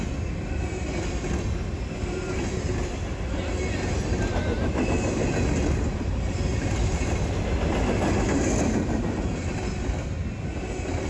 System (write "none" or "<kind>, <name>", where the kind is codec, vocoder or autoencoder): none